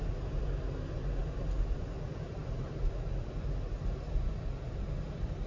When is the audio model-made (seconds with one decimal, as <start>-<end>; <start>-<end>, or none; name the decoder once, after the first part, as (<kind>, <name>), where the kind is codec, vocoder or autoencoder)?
none